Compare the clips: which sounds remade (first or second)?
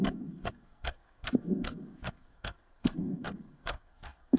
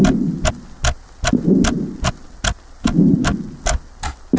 first